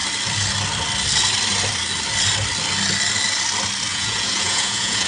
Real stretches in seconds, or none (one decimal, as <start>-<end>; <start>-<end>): 0.0-3.9